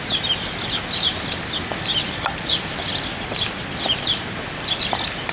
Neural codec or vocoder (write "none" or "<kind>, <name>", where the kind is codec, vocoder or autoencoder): none